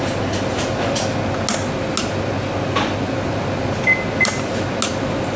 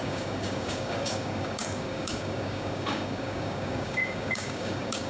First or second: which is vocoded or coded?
second